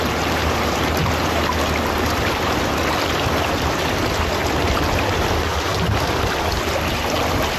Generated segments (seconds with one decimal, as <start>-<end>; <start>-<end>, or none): 0.4-1.4